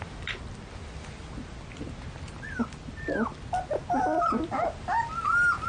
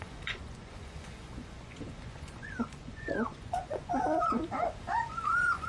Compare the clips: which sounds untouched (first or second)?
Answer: first